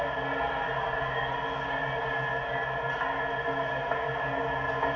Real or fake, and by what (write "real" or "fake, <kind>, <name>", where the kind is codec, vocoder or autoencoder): real